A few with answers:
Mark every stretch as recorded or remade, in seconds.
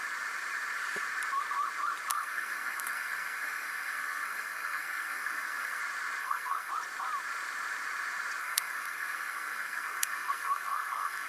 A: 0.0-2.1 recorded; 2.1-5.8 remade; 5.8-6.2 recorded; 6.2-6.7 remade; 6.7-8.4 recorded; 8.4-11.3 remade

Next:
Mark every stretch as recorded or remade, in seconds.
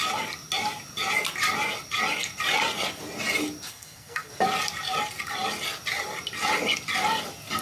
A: 0.0-3.7 recorded; 3.7-4.3 remade; 4.3-7.6 recorded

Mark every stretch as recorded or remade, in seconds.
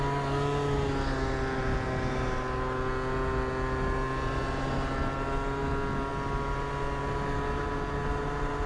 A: 0.0-8.7 recorded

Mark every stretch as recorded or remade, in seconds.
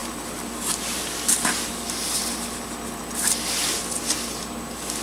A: 0.0-5.0 recorded